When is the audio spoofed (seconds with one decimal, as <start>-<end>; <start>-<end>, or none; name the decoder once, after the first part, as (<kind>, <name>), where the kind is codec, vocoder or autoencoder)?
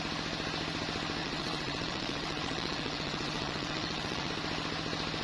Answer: 1.2-4.3 (vocoder, WaveNeXt)